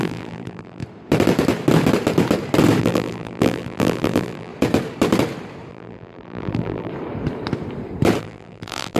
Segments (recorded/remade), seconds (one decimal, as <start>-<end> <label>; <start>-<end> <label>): 0.0-0.8 remade; 0.8-2.8 recorded; 2.8-4.5 remade; 4.5-5.7 recorded; 5.7-6.9 remade; 6.9-8.2 recorded; 8.2-9.0 remade